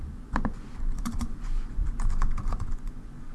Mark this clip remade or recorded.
remade